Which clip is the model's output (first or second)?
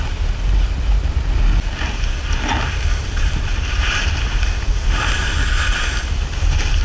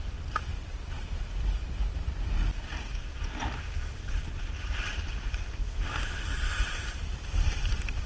second